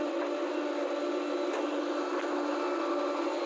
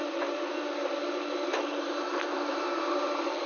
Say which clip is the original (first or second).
first